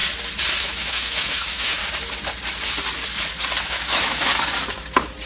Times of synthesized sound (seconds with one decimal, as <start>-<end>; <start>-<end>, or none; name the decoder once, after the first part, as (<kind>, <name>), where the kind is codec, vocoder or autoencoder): 0.6-1.8 (autoencoder, DAC-VAE); 3.6-4.3